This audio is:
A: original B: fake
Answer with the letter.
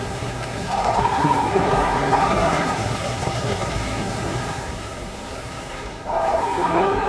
B